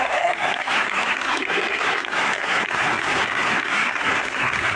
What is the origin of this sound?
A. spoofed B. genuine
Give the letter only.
A